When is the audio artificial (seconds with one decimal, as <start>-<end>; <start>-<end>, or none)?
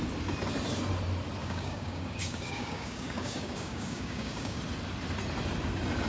1.4-4.6